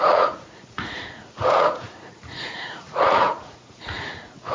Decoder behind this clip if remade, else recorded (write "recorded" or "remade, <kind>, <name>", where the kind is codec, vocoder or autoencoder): remade, vocoder, Vocos